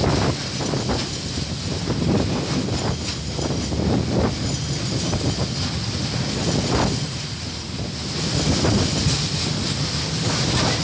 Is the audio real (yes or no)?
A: yes